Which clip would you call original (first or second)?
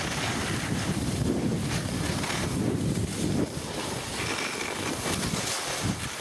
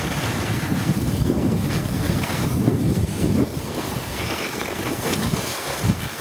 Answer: first